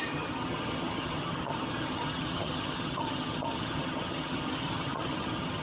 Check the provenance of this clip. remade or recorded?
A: remade